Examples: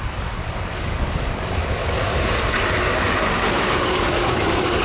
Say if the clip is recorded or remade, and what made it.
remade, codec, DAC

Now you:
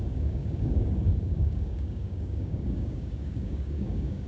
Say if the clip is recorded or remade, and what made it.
remade, codec, DAC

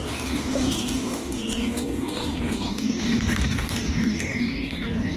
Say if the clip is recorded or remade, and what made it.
remade, codec, DAC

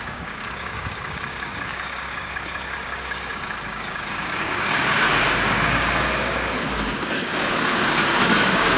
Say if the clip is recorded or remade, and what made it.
remade, codec, DAC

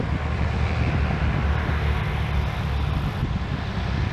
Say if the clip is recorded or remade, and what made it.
recorded